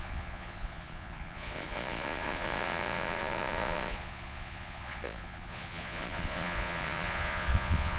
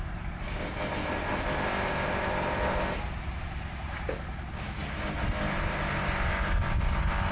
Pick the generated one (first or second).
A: first